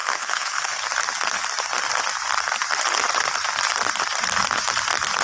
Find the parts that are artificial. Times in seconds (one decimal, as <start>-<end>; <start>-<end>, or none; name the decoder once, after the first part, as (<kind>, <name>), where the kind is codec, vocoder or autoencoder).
0.0-0.8 (codec, HILCodec)